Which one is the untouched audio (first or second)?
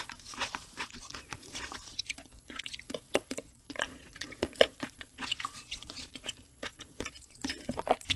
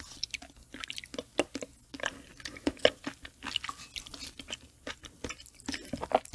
second